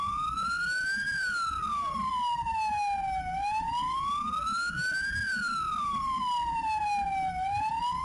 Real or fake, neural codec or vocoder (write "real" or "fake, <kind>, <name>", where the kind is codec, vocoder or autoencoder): real